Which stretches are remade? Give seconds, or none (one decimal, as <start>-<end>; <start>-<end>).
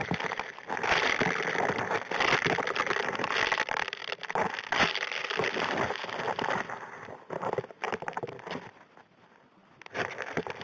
none